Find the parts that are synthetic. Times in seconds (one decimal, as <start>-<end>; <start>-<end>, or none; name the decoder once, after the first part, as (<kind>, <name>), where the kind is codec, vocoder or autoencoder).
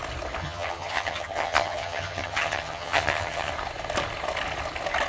0.4-3.5 (vocoder, HiFi-GAN)